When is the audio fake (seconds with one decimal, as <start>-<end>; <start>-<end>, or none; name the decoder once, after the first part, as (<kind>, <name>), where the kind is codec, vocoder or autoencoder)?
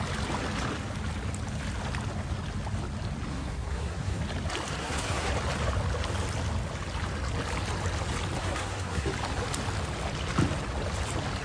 3.3-4.2 (codec, SNAC); 4.8-5.3; 8.4-9.1